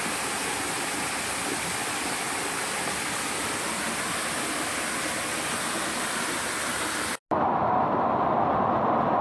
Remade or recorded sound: recorded